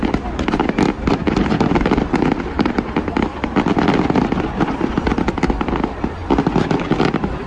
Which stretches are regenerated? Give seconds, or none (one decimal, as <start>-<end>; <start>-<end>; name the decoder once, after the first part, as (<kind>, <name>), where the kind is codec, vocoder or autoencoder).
none